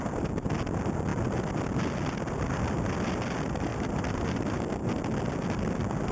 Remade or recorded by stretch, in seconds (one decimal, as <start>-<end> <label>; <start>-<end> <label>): 0.0-3.7 recorded; 3.7-4.4 remade; 4.4-6.1 recorded

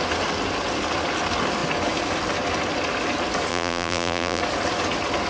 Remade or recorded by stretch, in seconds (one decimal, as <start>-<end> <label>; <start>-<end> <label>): 0.0-3.5 recorded; 3.5-4.4 remade; 4.4-5.3 recorded

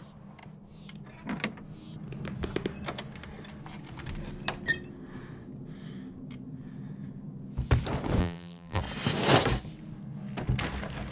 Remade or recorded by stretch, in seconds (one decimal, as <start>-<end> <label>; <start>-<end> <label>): 0.0-8.2 recorded; 8.2-8.8 remade; 8.8-11.1 recorded

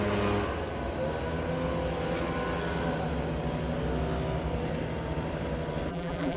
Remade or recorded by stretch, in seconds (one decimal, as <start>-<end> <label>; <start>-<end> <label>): 0.0-5.9 recorded; 5.9-6.4 remade

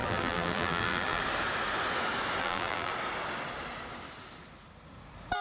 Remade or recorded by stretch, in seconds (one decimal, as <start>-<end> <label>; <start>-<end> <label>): 0.0-1.2 remade; 1.2-2.4 recorded; 2.4-2.9 remade; 2.9-5.4 recorded

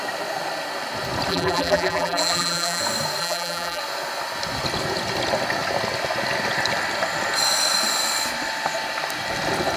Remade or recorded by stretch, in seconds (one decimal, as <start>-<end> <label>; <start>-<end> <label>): 0.0-1.3 recorded; 1.3-2.8 remade; 2.8-3.2 recorded; 3.2-3.8 remade; 3.8-9.8 recorded